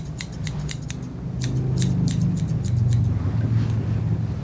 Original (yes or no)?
yes